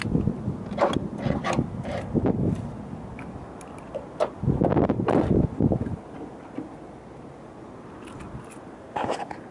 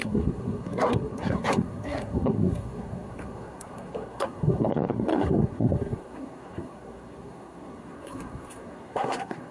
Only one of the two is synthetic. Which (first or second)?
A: second